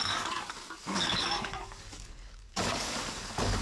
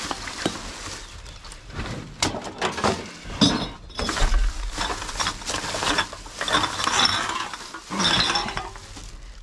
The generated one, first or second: first